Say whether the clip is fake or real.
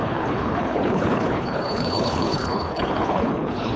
fake